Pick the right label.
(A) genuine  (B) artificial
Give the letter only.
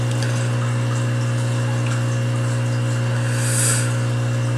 A